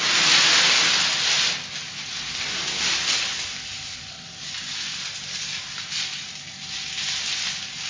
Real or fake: real